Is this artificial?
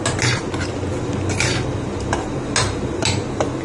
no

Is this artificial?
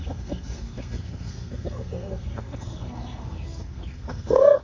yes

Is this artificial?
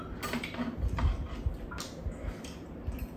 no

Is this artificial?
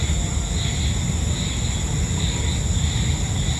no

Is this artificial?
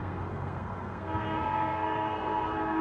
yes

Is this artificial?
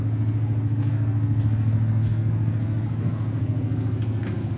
yes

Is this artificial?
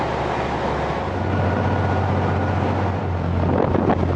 no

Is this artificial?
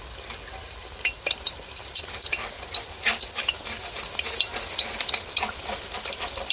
no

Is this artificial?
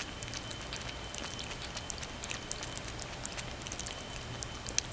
no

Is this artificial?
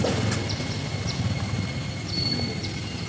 no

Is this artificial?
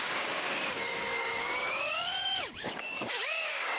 yes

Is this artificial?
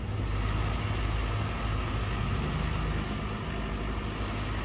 no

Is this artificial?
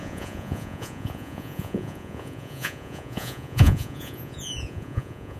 yes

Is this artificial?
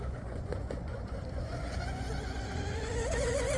yes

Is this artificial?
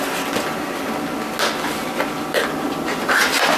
no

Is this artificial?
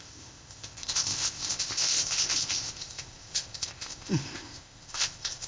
yes